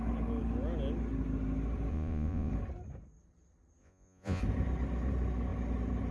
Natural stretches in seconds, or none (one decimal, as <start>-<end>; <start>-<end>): 0.0-1.9; 2.5-3.8; 4.4-6.1